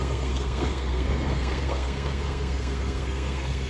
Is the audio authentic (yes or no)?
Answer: no